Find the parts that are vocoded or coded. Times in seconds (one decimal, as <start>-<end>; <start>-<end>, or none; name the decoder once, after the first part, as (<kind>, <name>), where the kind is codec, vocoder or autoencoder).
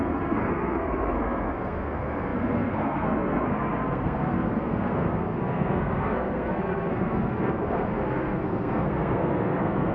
0.0-9.9 (codec, SNAC)